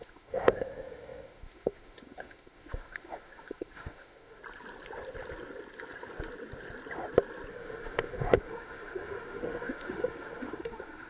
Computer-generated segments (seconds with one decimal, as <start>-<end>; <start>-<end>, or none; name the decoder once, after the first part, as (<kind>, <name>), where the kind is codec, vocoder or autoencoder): 0.0-4.4 (autoencoder, DAC-VAE); 7.5-11.1